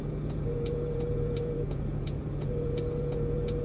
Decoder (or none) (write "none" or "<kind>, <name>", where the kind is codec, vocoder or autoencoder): vocoder, Vocos